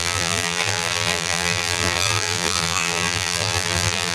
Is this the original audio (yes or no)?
no